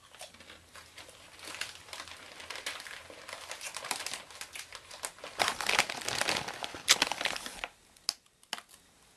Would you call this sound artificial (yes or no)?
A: no